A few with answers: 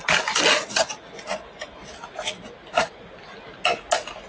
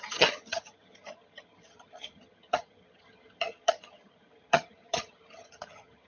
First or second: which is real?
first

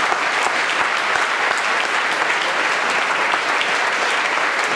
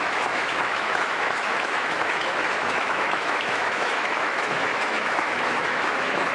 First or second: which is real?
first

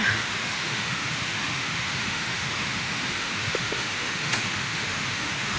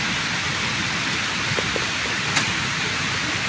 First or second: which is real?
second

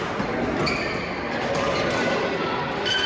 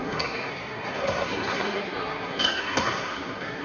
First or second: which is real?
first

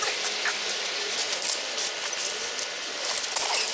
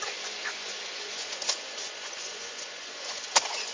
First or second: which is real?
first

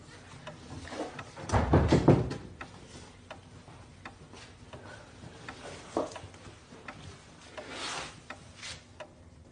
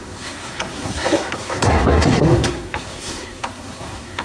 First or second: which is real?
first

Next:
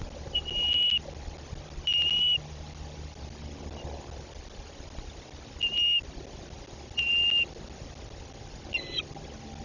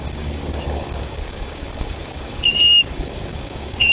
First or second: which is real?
first